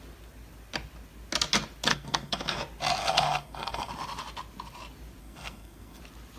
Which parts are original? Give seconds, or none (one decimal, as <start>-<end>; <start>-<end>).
0.0-1.9; 2.6-3.0; 3.9-5.2; 6.0-6.4